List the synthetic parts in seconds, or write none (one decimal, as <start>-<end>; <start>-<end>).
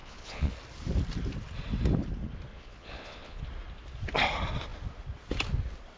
0.0-0.5; 2.5-3.4